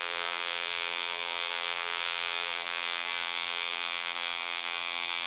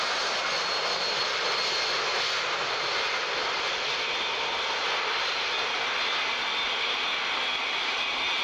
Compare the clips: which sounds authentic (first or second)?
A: second